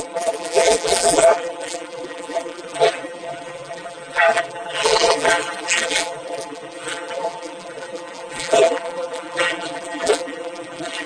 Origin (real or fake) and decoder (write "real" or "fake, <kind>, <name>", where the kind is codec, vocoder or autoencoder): fake, vocoder, BigVGAN v2